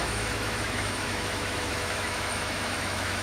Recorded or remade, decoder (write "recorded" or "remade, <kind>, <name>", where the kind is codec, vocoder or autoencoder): remade, autoencoder, DAC-VAE